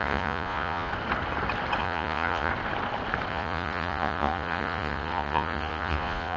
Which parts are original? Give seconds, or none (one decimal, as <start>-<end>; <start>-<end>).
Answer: 0.9-1.8; 2.5-3.3